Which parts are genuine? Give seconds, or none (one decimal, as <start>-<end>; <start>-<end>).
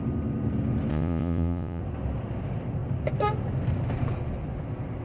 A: 0.0-0.9; 1.8-5.0